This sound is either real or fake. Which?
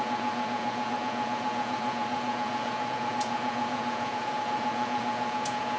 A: fake